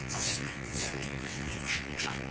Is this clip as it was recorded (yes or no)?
no